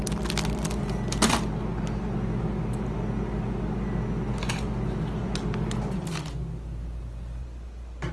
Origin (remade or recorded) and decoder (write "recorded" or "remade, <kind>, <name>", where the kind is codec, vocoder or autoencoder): recorded